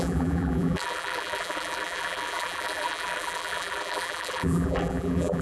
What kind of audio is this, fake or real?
fake